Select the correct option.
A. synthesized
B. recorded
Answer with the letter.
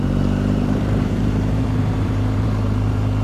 A